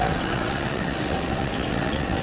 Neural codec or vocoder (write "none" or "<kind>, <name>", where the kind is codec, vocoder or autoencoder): vocoder, WaveNeXt